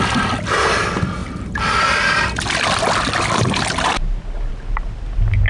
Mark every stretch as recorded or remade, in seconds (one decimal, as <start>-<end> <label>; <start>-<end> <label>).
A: 0.0-5.5 recorded